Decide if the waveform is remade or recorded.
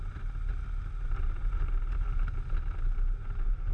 recorded